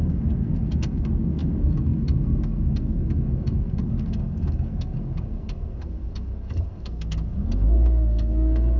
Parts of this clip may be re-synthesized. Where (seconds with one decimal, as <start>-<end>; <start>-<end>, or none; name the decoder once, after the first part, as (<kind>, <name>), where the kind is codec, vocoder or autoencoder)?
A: 0.0-8.8 (codec, SNAC)